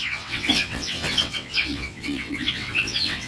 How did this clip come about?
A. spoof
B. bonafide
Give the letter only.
A